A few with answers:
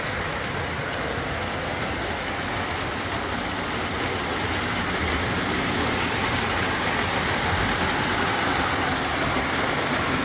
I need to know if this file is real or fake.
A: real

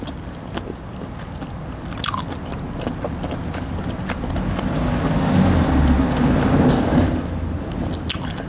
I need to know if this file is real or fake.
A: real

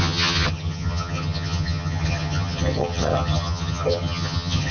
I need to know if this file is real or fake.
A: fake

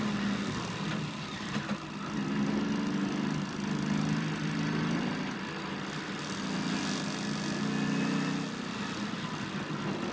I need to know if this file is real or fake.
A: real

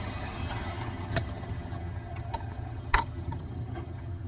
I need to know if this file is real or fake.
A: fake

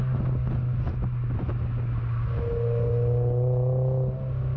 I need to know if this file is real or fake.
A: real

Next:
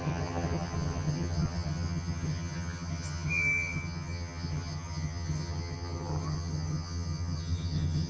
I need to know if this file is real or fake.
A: fake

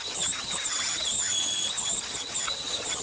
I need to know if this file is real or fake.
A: fake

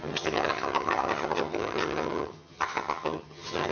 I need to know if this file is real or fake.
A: fake